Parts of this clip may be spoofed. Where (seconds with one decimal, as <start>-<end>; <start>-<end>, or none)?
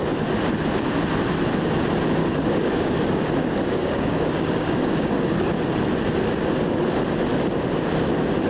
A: 2.2-3.0; 3.4-5.5